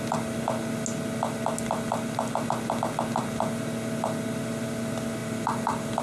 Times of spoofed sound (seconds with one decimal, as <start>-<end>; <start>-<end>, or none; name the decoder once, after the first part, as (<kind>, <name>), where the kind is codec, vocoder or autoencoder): 5.2-6.0 (vocoder, BigVGAN v2)